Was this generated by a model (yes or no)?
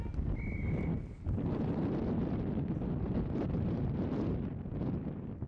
no